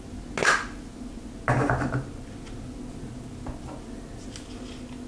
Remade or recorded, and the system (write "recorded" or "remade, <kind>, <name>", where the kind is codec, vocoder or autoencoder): recorded